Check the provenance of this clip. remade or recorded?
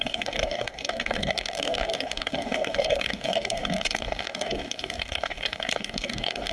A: remade